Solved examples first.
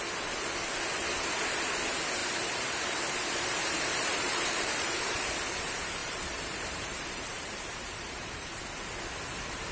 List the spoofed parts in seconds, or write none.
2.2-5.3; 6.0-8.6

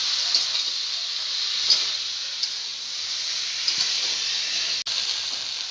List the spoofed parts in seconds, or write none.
none

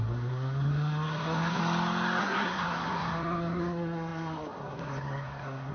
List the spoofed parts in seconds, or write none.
0.0-1.6; 2.2-5.7

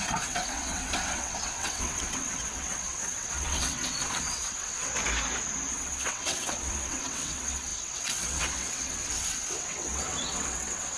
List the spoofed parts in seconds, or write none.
0.0-4.9; 5.7-11.0

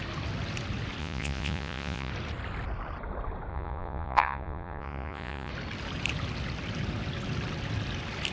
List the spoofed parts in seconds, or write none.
1.0-2.1; 3.5-5.5

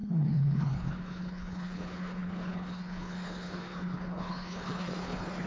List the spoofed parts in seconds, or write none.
0.0-5.5

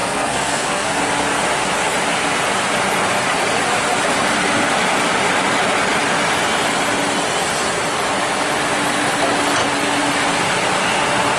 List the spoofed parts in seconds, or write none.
0.0-1.0

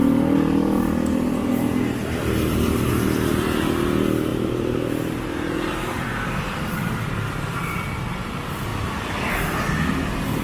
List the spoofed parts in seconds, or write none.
4.3-6.8